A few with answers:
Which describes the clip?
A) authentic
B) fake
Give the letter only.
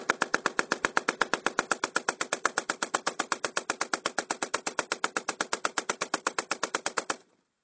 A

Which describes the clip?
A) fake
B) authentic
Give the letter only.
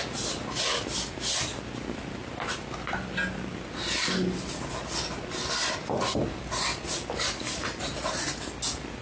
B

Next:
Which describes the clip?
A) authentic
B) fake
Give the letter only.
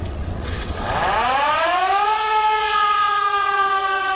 B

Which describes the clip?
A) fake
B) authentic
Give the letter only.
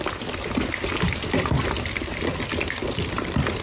B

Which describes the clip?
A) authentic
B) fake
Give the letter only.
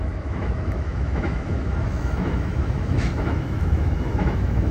B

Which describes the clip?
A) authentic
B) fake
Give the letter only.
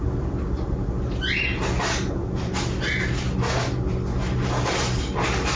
A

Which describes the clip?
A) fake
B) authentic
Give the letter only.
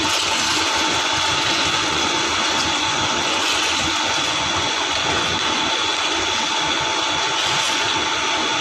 A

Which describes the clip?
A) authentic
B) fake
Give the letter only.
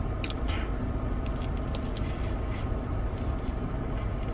A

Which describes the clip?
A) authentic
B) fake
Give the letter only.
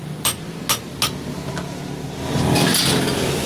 A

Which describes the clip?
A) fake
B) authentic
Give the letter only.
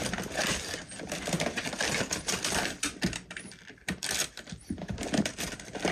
A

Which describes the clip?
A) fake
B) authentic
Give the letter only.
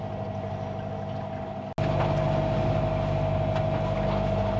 B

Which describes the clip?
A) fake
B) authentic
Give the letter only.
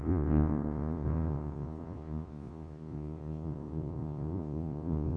A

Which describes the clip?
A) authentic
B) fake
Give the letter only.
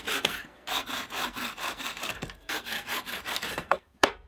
B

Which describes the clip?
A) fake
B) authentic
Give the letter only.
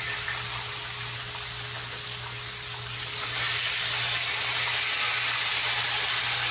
B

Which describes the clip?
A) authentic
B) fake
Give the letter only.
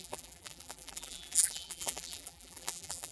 B